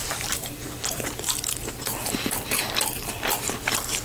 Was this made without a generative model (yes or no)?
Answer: no